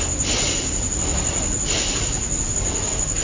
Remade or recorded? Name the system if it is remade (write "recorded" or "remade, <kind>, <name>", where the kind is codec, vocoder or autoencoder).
recorded